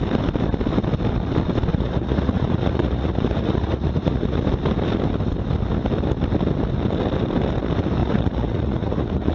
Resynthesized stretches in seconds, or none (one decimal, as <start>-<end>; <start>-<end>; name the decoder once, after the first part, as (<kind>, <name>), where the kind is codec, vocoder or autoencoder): 1.7-4.4 (vocoder, Vocos); 8.0-9.3